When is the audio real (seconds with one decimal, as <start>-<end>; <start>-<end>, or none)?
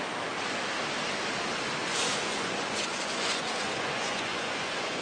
0.0-1.8